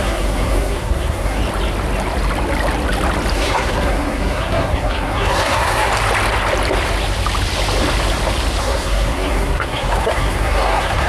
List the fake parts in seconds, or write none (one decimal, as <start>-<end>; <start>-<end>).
0.0-1.4; 3.3-5.9; 8.6-11.1